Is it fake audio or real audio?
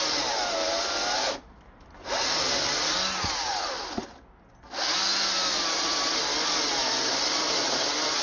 real